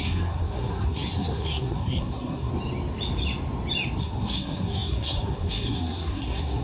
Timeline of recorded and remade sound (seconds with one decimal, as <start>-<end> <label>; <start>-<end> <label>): 0.0-2.5 remade; 2.5-4.0 recorded; 4.0-6.6 remade